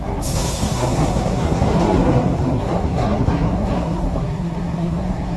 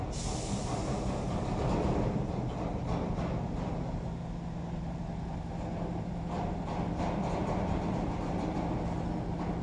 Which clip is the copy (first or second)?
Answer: first